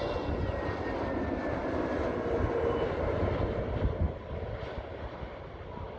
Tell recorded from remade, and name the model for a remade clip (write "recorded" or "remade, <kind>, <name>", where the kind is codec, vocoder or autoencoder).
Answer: recorded